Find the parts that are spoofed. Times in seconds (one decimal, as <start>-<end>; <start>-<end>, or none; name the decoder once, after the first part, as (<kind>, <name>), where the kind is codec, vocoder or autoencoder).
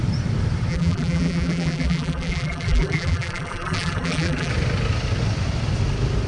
0.7-4.5 (vocoder, BigVGAN v2)